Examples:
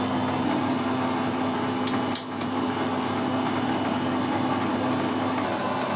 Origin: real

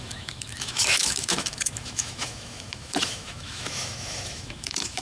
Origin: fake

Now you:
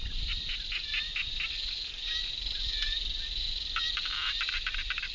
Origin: real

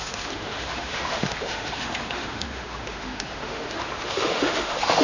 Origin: fake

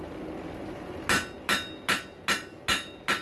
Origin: real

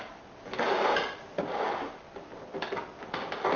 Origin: real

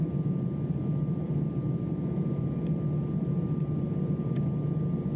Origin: real